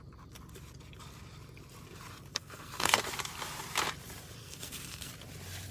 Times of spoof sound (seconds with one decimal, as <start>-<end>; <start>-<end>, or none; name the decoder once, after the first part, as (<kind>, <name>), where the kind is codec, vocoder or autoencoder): 2.3-3.0 (codec, SNAC); 4.4-5.1